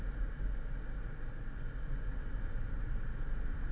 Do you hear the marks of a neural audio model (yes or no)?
no